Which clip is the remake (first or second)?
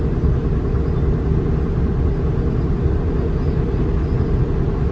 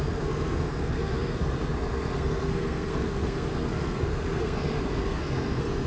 second